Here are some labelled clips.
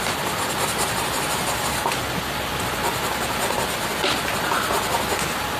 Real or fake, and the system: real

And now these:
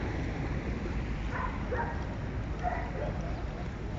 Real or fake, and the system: fake, vocoder, BigVGAN v2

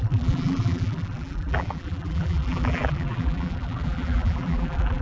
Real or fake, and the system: fake, vocoder, BigVGAN v2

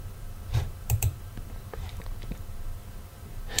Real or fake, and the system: fake, vocoder, BigVGAN v2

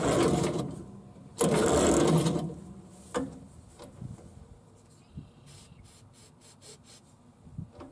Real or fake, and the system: real